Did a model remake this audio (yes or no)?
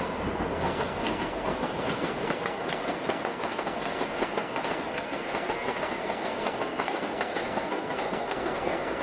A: yes